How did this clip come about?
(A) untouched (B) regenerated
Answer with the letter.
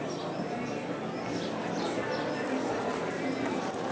A